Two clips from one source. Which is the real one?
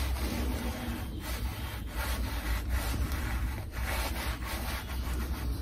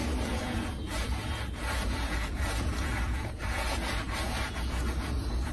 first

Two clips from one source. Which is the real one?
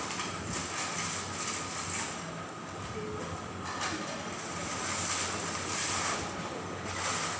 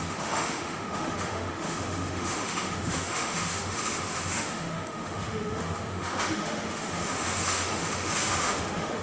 first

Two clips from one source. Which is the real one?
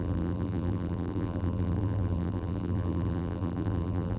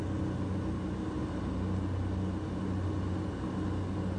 second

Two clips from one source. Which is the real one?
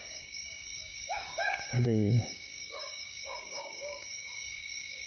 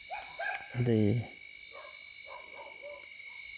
second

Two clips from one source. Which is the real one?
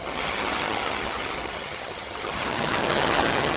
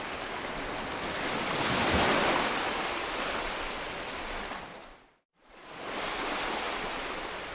second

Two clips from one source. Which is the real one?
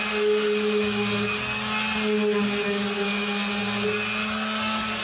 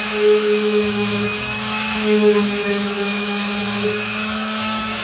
first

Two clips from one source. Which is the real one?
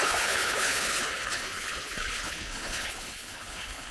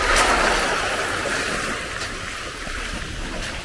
second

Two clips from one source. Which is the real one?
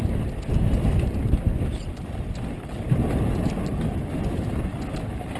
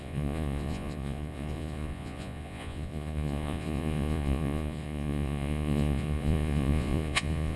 first